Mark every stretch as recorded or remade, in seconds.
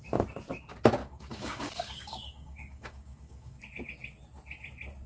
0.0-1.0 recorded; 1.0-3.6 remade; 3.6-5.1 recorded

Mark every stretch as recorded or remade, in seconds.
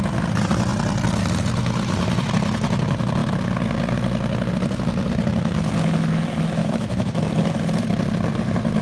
0.0-6.6 recorded; 6.6-7.2 remade; 7.2-8.8 recorded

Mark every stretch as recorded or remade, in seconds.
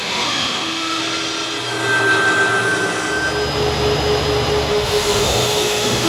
0.0-1.0 remade; 1.0-4.7 recorded; 4.7-6.1 remade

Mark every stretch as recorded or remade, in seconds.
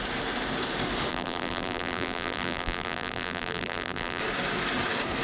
0.0-1.1 recorded; 1.1-4.2 remade; 4.2-5.2 recorded